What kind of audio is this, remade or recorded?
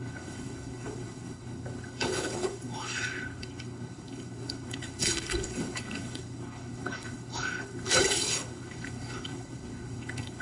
remade